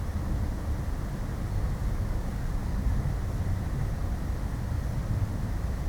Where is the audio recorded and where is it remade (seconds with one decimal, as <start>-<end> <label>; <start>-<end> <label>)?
0.0-1.8 recorded; 1.8-3.1 remade; 3.1-5.9 recorded